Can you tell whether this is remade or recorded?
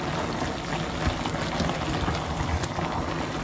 recorded